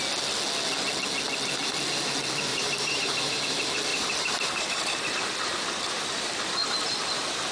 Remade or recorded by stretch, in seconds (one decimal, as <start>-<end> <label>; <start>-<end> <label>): 0.0-2.5 recorded; 2.5-3.4 remade; 3.4-3.9 recorded; 3.9-5.1 remade; 5.1-7.5 recorded